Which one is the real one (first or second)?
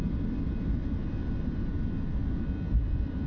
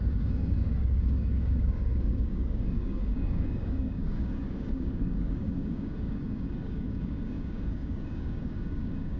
first